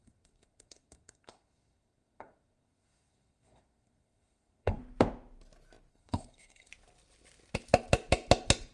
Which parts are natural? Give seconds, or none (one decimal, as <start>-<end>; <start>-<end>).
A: 4.8-5.9; 6.7-8.7